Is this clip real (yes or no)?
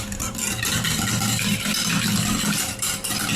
yes